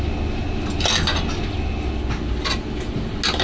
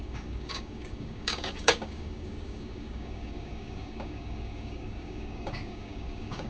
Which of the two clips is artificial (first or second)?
second